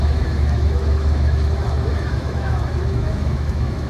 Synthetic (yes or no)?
yes